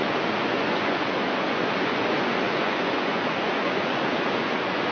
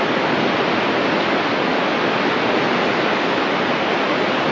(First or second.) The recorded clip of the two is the second